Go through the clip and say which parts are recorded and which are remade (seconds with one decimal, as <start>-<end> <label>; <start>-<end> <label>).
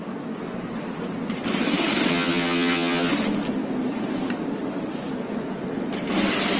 0.0-2.1 recorded; 2.1-3.1 remade; 3.1-6.6 recorded